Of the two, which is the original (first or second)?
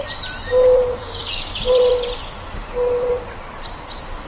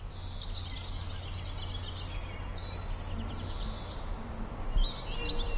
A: second